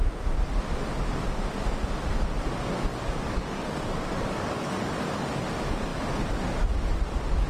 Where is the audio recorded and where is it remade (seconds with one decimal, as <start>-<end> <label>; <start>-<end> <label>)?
0.0-2.9 recorded; 2.9-4.9 remade; 4.9-7.5 recorded